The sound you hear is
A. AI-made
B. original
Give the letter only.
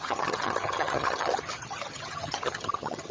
A